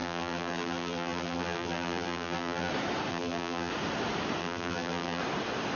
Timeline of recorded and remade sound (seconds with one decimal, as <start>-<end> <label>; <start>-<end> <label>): 0.0-2.7 remade; 2.7-3.1 recorded; 3.1-3.7 remade; 3.7-4.4 recorded; 4.4-5.2 remade; 5.2-5.8 recorded